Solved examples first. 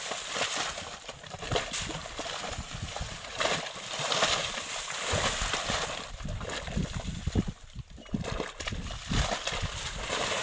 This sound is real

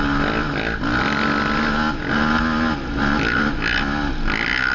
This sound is real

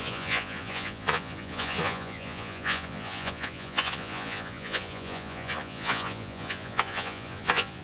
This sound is fake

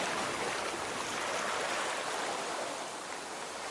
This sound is real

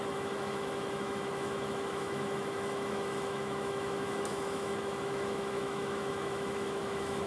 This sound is fake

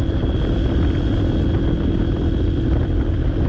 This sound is real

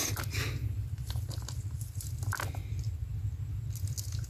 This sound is real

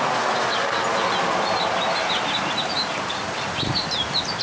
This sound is real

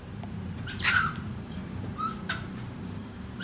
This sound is fake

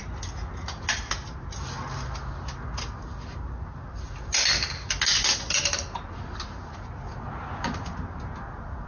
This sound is real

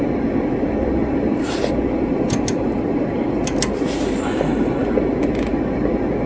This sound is real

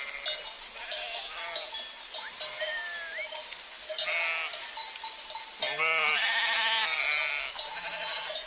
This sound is real